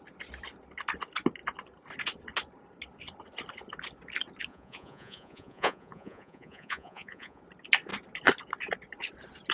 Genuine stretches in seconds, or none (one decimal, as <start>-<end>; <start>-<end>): 0.0-4.5; 7.4-9.5